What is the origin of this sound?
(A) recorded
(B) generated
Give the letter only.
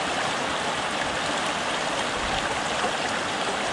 A